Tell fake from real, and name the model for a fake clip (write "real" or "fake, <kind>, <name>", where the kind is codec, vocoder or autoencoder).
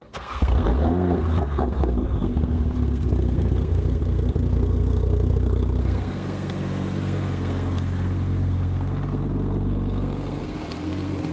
fake, codec, SNAC